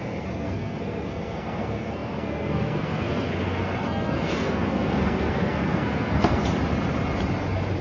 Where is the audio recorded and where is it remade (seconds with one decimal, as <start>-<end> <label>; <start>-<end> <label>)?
0.0-6.4 remade; 6.4-7.8 recorded